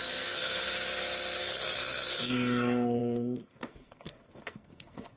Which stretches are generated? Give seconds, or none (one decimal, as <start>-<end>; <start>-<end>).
0.0-0.6; 1.4-5.2

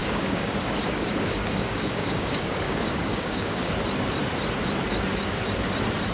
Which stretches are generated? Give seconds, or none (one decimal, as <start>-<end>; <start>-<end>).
0.0-3.7

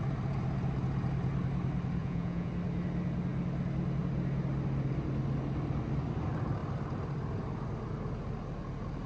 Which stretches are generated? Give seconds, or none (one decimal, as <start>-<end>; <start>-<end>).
2.0-2.5

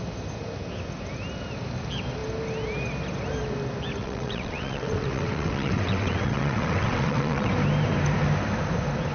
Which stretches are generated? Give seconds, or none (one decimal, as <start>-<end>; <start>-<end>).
4.0-7.5

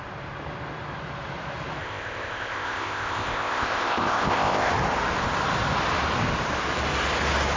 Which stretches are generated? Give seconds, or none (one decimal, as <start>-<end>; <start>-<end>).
1.8-4.7

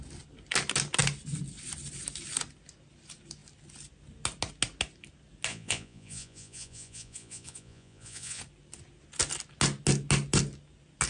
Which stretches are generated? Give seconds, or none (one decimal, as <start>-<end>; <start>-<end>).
5.5-8.4

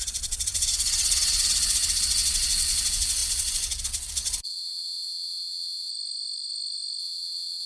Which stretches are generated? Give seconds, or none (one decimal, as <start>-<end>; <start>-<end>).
0.0-5.9; 7.0-7.7